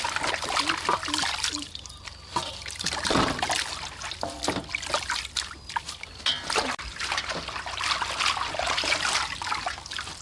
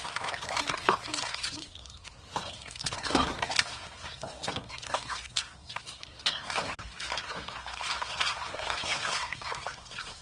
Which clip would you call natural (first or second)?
first